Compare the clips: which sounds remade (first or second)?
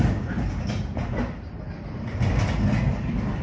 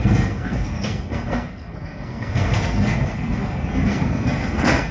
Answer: second